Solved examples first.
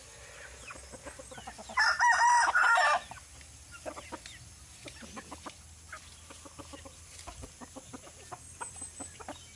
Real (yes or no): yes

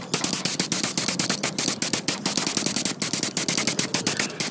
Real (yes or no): yes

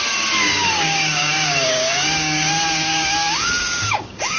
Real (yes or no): no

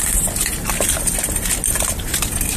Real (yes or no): yes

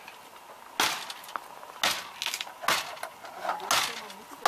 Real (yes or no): yes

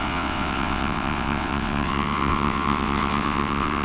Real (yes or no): no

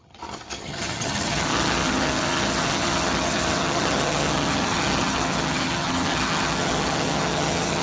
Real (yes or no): no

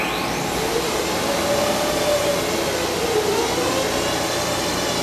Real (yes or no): yes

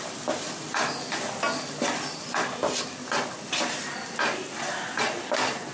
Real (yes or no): yes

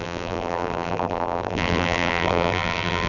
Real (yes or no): no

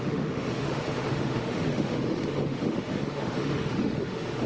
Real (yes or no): no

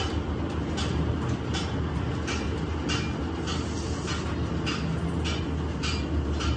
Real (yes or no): yes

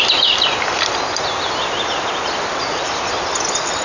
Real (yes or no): yes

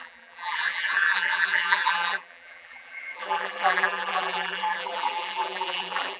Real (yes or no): no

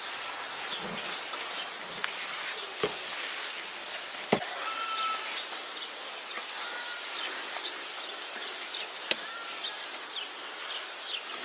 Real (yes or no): yes